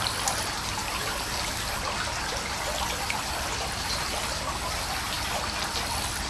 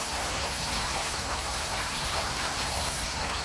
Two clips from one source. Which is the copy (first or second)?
second